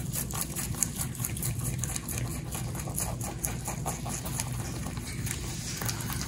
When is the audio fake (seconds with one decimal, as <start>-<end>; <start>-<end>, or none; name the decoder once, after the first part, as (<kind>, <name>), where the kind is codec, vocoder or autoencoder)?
0.0-2.3 (vocoder, BigVGAN v2)